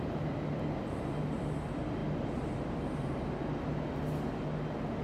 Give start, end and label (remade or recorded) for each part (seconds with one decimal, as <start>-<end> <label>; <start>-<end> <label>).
0.0-5.0 recorded